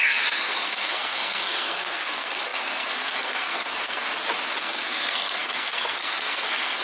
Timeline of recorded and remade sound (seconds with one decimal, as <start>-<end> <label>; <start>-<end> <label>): 0.0-4.1 remade; 4.1-4.6 recorded; 4.6-6.8 remade